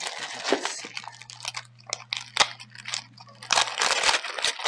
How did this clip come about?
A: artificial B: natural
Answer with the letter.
B